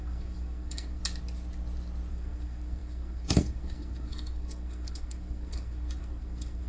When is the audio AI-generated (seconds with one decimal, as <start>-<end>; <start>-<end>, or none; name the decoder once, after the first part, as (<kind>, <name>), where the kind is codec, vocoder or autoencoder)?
0.0-1.0 (codec, SNAC); 2.1-6.7